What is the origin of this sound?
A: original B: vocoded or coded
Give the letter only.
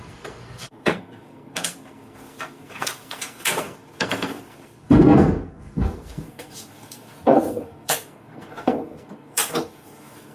B